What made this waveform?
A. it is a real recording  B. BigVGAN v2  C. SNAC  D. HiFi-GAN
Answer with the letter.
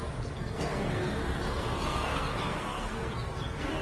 C